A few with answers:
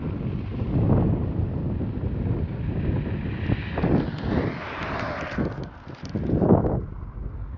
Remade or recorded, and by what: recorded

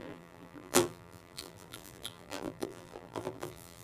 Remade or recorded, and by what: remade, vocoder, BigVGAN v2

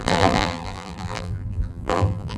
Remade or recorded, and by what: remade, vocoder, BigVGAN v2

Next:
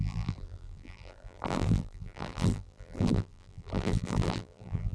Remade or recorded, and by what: remade, vocoder, BigVGAN v2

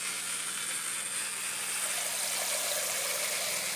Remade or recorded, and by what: recorded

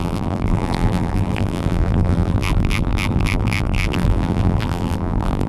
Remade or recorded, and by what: remade, vocoder, BigVGAN v2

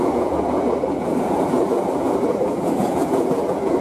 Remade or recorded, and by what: remade, vocoder, BigVGAN v2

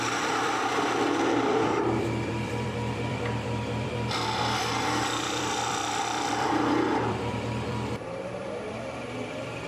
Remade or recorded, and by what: remade, vocoder, BigVGAN v2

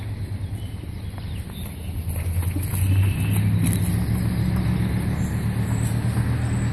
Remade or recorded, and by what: recorded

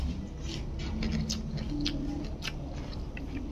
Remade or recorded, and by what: recorded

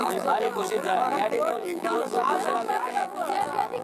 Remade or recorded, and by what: remade, vocoder, BigVGAN v2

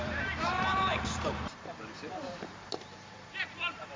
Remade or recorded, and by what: remade, vocoder, BigVGAN v2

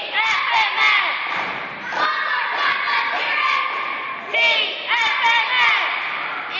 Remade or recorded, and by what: recorded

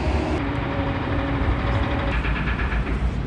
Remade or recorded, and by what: remade, vocoder, BigVGAN v2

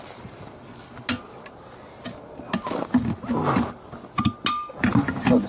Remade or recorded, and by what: recorded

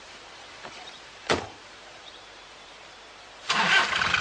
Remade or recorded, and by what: remade, vocoder, BigVGAN v2